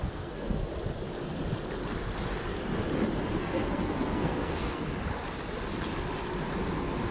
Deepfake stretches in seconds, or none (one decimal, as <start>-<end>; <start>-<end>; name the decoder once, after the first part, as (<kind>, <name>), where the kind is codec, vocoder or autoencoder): 0.0-0.7 (codec, SNAC); 3.4-4.8

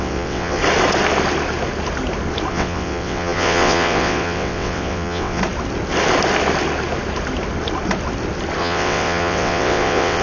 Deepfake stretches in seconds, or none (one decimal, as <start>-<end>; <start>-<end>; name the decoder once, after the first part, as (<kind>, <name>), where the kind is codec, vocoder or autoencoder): 0.0-0.6 (vocoder, WaveNeXt); 2.5-5.4; 8.6-10.2

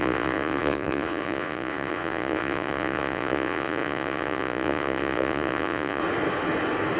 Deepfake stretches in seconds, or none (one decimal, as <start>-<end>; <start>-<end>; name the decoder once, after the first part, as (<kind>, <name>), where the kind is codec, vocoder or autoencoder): 0.0-6.0 (vocoder, Vocos)

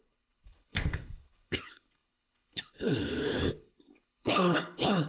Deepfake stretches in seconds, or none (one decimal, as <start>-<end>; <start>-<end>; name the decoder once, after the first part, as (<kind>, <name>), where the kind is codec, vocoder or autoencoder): 0.0-5.1 (codec, HILCodec)

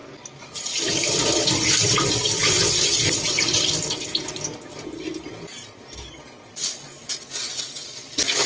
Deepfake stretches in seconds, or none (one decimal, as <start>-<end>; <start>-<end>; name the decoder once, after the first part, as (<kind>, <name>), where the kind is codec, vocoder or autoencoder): 0.0-3.8 (vocoder, BigVGAN v2)

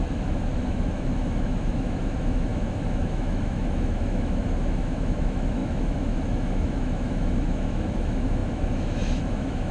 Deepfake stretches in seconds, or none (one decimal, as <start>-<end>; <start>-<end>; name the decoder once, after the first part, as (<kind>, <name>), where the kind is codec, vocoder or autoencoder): 0.0-9.7 (autoencoder, DAC-VAE)